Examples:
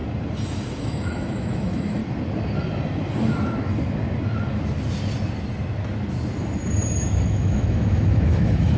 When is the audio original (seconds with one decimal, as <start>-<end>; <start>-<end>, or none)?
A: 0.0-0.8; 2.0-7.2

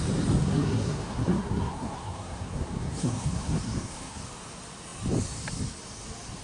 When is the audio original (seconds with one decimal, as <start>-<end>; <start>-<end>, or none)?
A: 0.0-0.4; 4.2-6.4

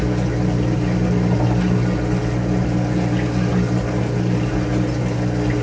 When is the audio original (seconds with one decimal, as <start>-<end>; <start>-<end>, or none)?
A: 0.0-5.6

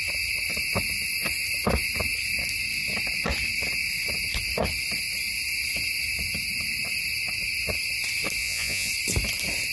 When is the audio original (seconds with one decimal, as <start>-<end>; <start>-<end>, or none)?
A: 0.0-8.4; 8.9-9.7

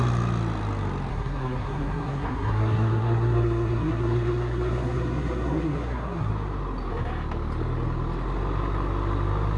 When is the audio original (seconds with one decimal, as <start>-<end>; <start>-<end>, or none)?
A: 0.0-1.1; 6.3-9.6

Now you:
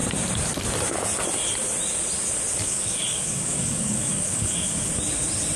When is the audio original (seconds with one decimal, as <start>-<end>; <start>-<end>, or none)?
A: 0.0-2.6; 4.9-5.6

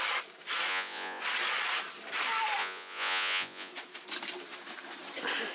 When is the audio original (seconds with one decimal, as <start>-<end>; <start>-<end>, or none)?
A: 0.0-0.7; 1.2-2.6; 3.7-5.5